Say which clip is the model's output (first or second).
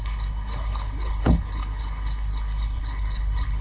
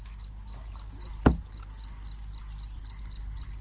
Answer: first